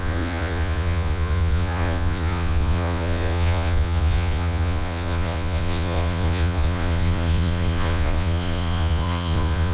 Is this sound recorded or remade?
remade